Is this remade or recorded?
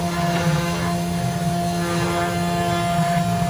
recorded